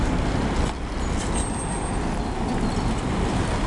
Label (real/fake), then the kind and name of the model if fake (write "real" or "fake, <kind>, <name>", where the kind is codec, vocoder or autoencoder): real